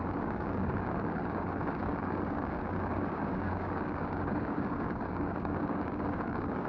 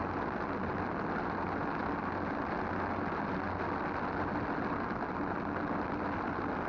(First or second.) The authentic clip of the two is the second